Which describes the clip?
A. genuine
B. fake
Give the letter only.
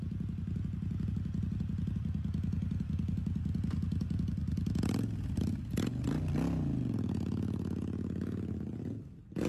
A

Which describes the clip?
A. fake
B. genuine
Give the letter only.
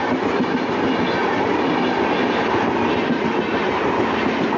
B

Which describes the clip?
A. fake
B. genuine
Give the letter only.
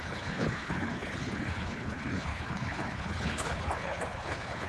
A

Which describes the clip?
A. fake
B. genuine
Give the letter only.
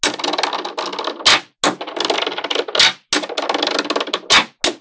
B